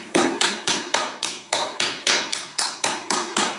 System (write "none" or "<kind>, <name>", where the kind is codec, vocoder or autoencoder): codec, SNAC